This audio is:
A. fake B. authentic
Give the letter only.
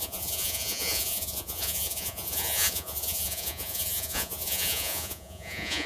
A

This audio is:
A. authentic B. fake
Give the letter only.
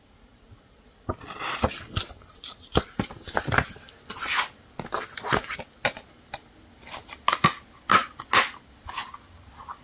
A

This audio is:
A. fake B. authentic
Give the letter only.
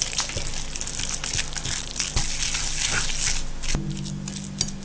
B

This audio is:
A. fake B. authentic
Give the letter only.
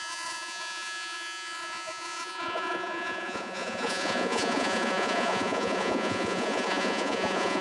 A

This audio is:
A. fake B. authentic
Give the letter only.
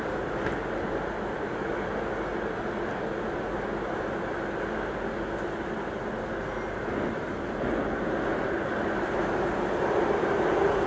B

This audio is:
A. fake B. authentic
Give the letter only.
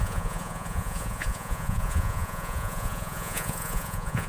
A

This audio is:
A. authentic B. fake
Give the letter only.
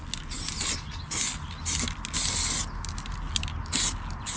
A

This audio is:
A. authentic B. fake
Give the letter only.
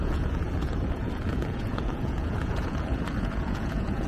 B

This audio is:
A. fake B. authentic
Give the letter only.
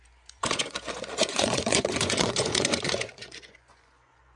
A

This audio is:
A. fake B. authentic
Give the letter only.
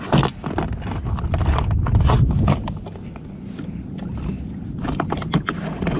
B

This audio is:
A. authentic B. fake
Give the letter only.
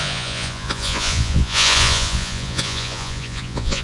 B